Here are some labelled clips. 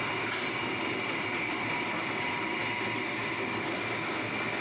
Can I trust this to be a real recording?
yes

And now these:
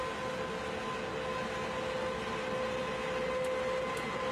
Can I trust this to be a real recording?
yes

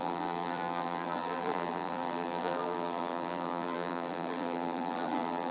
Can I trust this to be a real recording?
no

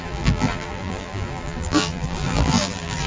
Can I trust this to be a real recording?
no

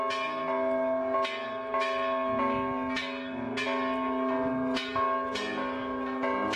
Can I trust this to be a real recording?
yes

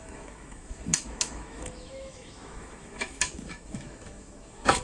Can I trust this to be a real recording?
no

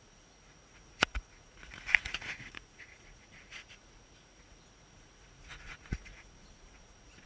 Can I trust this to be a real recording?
no